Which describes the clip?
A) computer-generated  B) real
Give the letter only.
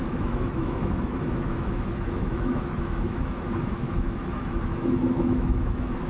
A